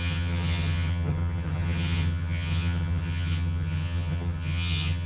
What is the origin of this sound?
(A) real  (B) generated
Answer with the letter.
B